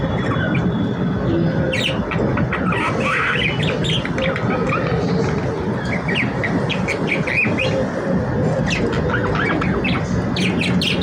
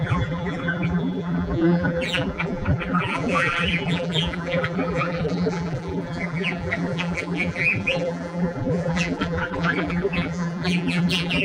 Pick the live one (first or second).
first